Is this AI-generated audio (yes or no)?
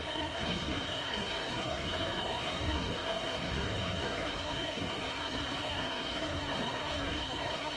yes